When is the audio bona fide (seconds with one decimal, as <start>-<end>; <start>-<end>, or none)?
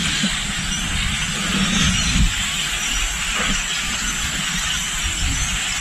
0.6-2.0; 2.6-3.1; 4.8-5.8